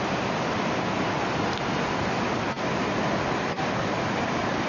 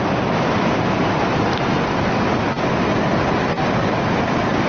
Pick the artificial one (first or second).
first